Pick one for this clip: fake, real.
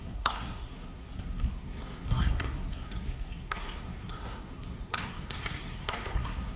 fake